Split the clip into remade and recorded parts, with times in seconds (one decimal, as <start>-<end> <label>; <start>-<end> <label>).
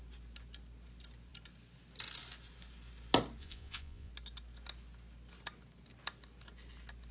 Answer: 0.0-3.4 recorded; 3.4-4.1 remade; 4.1-7.1 recorded